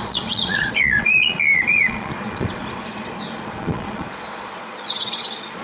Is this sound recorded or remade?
remade